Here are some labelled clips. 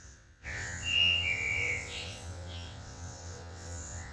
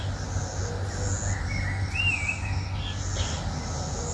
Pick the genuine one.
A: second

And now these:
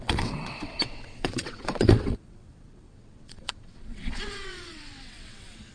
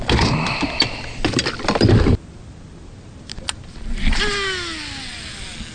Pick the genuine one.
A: second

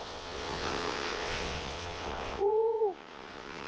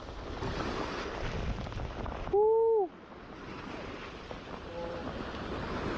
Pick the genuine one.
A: second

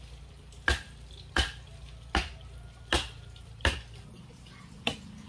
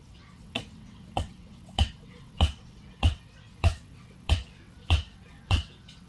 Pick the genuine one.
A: first